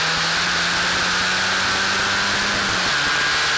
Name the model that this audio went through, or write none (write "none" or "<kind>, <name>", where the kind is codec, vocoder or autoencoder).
none